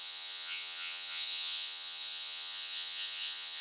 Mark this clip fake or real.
fake